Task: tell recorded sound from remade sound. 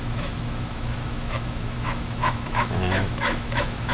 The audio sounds remade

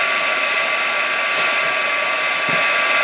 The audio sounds recorded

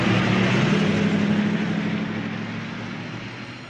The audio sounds recorded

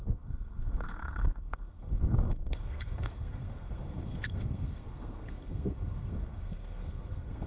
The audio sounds remade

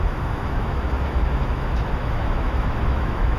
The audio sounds remade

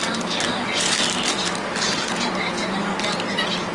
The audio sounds recorded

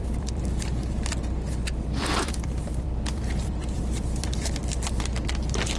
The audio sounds remade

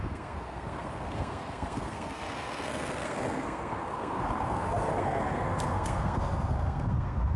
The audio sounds remade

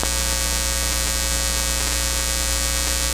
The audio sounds recorded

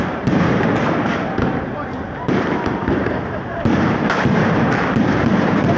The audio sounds remade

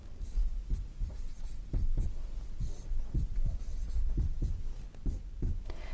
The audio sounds recorded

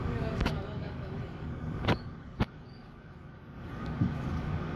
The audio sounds remade